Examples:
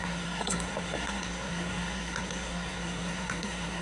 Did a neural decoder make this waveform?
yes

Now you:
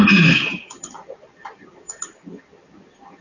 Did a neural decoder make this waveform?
no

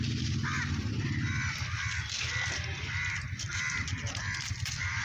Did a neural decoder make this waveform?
yes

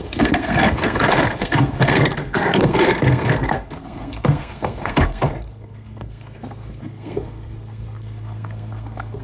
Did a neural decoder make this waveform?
yes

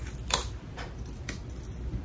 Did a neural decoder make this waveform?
no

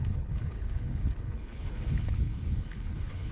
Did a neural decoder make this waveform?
yes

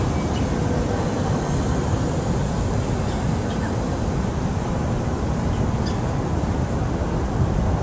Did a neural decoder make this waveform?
no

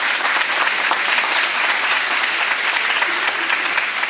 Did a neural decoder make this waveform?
no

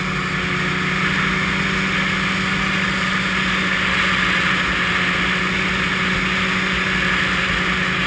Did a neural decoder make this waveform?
no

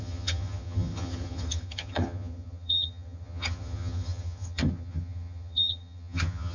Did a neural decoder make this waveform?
yes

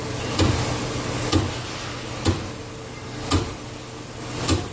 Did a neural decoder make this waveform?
no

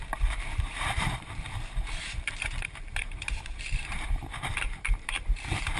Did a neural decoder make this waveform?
yes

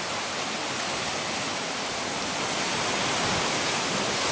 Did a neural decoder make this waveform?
no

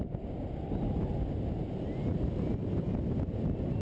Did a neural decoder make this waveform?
no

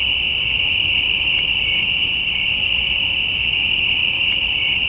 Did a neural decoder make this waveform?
no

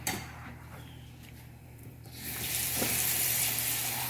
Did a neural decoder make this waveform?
yes